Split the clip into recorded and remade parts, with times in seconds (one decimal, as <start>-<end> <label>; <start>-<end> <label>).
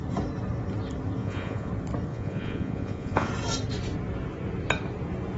0.0-1.2 recorded; 1.2-1.7 remade; 1.7-2.1 recorded; 2.1-3.3 remade; 3.3-5.4 recorded